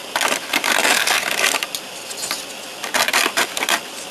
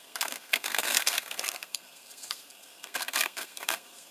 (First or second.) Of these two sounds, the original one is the first